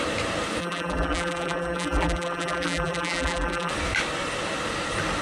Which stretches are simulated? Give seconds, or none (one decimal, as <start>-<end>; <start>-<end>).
0.6-3.7